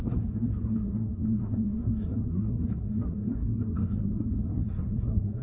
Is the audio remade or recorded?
remade